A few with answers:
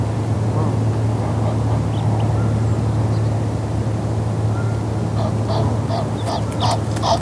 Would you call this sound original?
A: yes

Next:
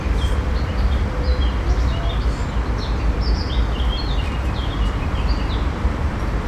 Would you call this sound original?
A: no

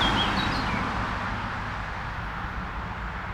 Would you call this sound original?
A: yes